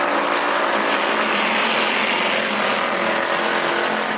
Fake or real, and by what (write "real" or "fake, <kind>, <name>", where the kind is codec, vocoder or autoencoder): real